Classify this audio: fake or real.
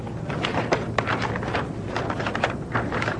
real